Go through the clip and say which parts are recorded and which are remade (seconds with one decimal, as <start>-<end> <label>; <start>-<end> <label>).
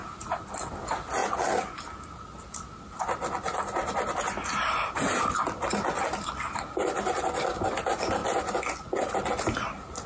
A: 0.0-10.1 recorded